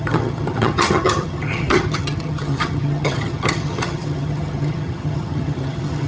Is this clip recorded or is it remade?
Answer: remade